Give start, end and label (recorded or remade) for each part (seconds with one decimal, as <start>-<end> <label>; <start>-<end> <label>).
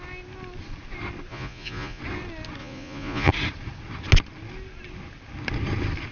0.0-1.3 recorded; 1.3-2.0 remade; 2.0-2.6 recorded; 2.6-3.3 remade; 3.3-6.1 recorded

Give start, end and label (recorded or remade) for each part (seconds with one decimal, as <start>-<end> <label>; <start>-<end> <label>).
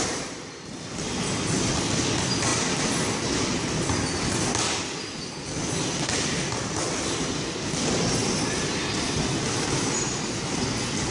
0.0-11.1 recorded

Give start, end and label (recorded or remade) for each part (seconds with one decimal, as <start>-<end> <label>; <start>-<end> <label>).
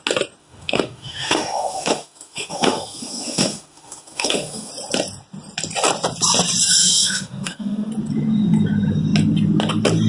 0.0-0.4 recorded; 0.4-4.7 remade; 4.7-6.8 recorded; 6.8-7.9 remade; 7.9-10.1 recorded